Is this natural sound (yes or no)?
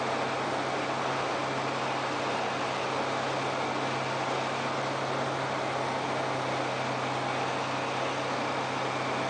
yes